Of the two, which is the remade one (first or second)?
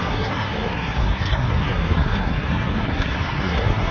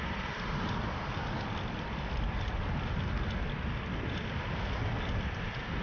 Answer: first